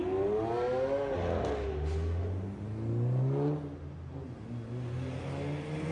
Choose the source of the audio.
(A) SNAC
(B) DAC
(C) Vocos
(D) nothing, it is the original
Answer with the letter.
D